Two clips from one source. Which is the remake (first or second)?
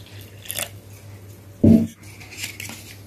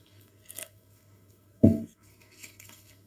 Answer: second